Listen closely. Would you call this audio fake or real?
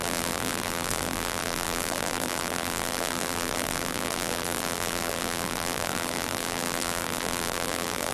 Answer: fake